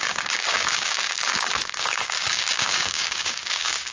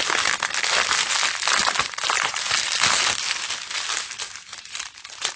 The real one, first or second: second